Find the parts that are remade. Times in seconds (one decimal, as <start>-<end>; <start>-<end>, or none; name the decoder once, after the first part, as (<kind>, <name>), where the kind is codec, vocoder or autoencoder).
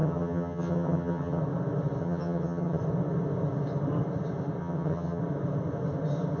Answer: 0.0-1.4 (vocoder, HiFi-GAN); 2.0-2.8; 4.6-5.2